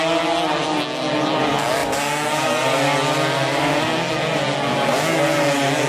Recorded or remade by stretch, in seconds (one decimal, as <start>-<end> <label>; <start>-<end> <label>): 0.0-5.9 recorded